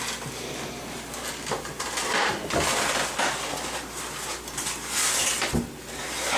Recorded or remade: recorded